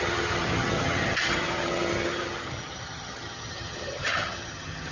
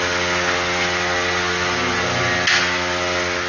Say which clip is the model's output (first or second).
first